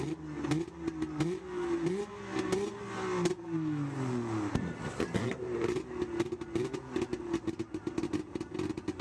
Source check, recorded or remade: recorded